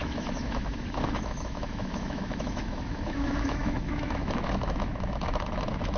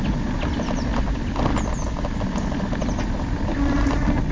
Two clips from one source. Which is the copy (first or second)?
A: first